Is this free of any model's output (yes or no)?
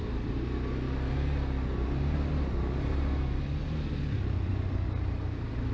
yes